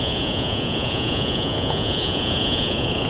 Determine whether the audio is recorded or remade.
remade